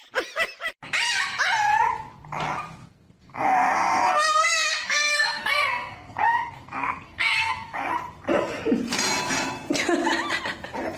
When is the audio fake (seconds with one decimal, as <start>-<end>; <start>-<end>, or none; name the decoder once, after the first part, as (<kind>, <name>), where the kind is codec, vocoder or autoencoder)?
2.8-7.9 (codec, SNAC)